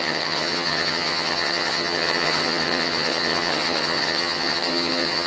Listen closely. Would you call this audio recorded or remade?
remade